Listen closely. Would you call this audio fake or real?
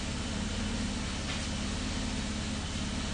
real